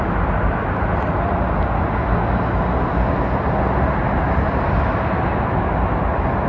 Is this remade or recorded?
recorded